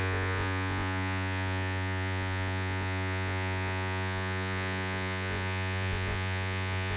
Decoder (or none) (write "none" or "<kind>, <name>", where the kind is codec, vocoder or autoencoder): vocoder, Vocos